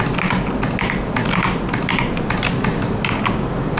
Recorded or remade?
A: recorded